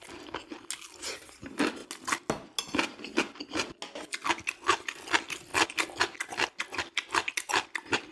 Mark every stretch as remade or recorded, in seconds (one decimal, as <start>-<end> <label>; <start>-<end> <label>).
0.0-8.1 recorded